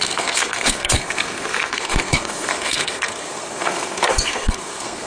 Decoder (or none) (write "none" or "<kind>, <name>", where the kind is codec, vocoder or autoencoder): codec, SNAC